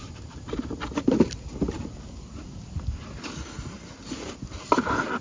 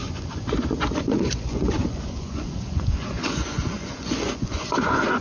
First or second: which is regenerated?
second